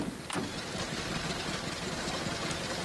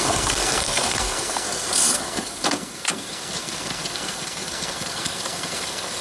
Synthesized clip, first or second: second